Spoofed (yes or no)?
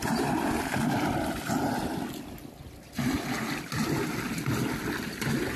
no